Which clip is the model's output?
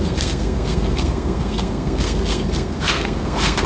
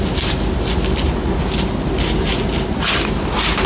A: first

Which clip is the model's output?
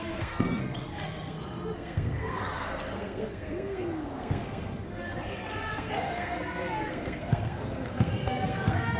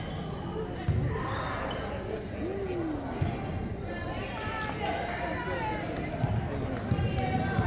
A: first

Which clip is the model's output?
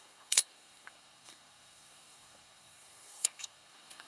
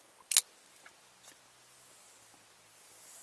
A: first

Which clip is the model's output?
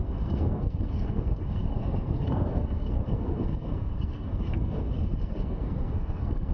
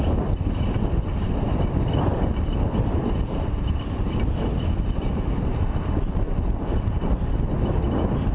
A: first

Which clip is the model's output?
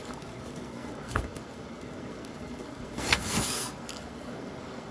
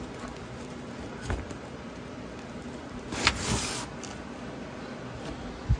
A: first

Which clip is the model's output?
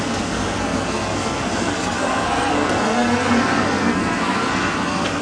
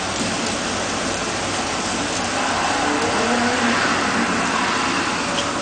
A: first